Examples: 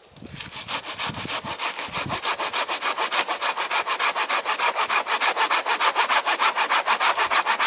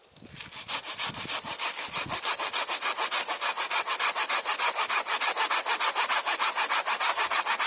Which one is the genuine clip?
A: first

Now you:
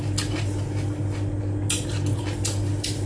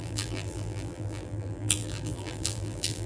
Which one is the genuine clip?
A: first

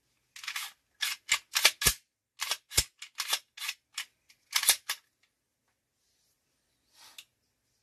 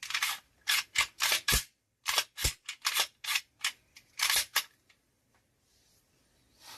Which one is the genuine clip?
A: first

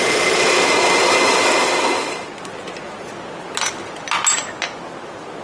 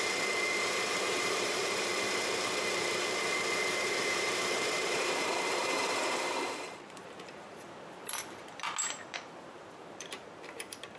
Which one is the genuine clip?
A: first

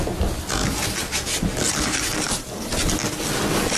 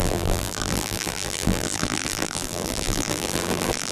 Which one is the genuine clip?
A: first